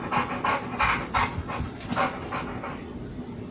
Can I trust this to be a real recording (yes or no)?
yes